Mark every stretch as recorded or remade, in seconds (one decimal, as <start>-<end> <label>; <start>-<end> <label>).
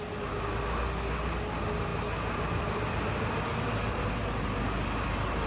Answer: 0.0-5.5 recorded